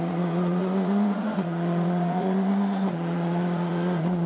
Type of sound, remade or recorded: remade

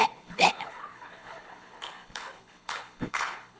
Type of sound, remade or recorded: remade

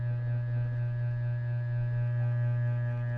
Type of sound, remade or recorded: recorded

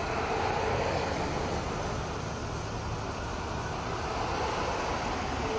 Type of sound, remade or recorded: recorded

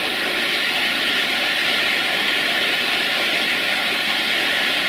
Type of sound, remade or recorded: recorded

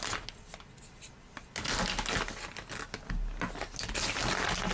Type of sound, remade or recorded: recorded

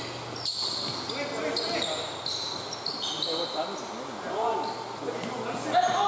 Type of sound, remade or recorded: recorded